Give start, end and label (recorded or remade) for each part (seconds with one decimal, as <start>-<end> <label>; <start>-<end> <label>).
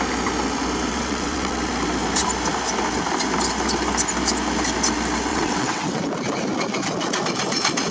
0.0-0.9 recorded; 0.9-1.7 remade; 1.7-5.3 recorded; 5.3-6.0 remade; 6.0-7.9 recorded